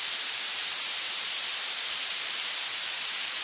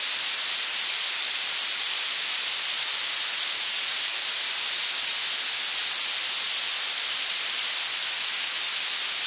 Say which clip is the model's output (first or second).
first